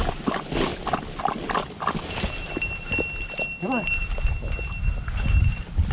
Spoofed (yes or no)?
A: no